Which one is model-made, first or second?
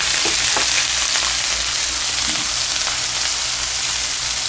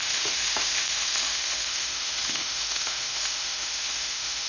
second